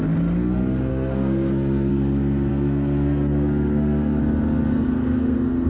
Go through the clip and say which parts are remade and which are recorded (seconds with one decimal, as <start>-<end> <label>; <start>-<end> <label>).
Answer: 0.0-0.9 recorded; 0.9-1.9 remade; 1.9-2.5 recorded; 2.5-4.2 remade; 4.2-4.7 recorded; 4.7-5.7 remade